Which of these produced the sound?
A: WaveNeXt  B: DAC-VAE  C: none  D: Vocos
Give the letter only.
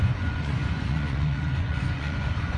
D